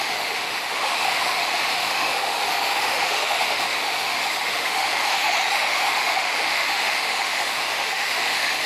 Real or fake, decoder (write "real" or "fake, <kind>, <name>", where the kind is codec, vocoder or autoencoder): fake, autoencoder, DAC-VAE